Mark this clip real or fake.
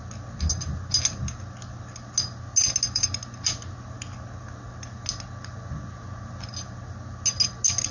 real